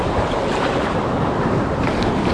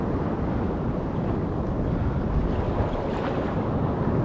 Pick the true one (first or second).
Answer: second